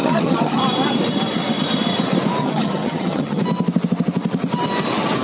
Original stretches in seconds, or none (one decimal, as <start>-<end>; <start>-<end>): 0.6-2.4; 3.4-5.2

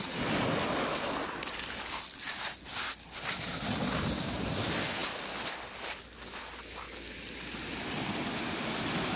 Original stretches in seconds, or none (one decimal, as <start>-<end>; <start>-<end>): 0.0-9.2

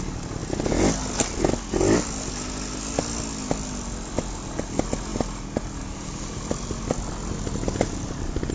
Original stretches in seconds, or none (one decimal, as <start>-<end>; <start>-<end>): 0.0-8.5